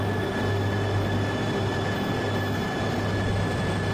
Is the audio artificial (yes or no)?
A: no